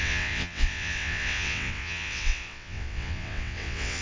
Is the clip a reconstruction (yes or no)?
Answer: yes